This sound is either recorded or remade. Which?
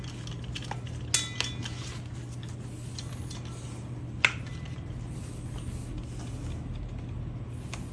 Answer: recorded